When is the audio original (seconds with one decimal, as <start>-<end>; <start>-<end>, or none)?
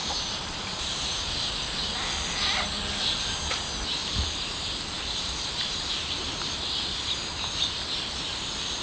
1.8-4.0; 6.4-8.8